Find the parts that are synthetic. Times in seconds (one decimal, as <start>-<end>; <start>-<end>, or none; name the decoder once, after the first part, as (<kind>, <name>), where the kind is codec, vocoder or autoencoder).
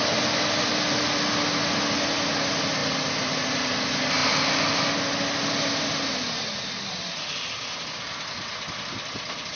none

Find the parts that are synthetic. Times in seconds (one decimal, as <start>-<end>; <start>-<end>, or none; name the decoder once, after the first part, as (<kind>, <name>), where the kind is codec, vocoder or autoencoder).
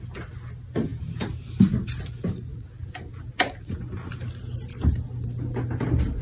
none